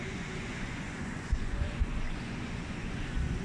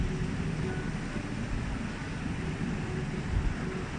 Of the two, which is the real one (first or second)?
second